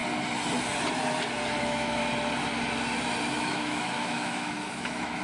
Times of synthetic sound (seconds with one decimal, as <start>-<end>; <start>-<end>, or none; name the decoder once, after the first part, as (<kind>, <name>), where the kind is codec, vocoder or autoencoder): 1.6-2.0 (autoencoder, DAC-VAE); 3.3-5.2